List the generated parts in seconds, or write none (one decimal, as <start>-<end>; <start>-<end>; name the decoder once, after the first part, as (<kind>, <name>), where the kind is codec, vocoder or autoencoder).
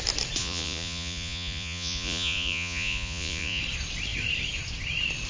0.4-3.6 (vocoder, Vocos)